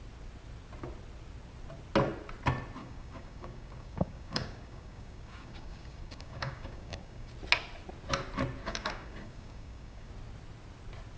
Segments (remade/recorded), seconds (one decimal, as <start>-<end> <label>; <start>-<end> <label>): 0.0-2.8 recorded; 2.8-7.3 remade; 7.3-8.6 recorded; 8.6-10.1 remade; 10.1-11.2 recorded